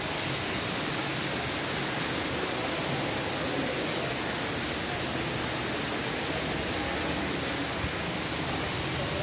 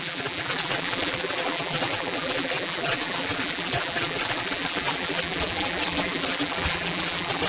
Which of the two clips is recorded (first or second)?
first